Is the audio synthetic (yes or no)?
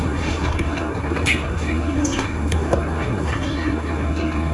yes